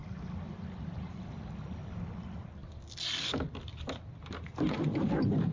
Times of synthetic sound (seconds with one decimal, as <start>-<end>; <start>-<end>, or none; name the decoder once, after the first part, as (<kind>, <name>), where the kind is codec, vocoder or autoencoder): none